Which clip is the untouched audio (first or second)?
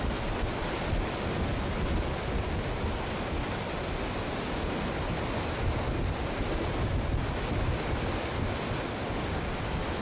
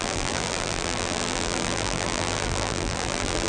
first